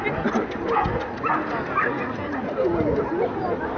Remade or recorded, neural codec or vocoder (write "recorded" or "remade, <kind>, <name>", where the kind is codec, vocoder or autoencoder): recorded